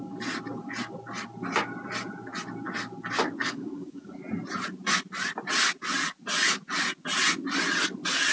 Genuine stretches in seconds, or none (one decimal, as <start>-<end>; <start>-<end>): 0.0-3.4; 4.2-8.3